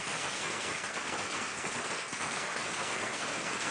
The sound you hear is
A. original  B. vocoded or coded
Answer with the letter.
B